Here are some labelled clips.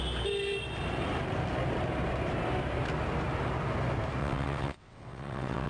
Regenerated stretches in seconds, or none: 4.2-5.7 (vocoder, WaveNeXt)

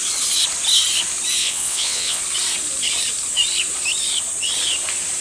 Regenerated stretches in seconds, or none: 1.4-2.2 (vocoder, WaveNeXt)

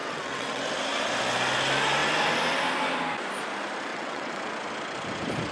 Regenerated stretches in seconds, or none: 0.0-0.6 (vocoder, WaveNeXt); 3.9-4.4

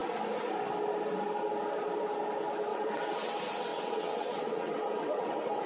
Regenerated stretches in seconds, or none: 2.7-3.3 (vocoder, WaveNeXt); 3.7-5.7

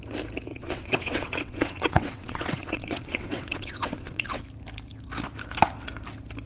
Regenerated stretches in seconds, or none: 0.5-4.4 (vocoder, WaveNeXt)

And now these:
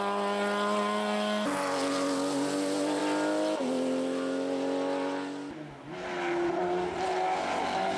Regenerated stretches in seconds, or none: none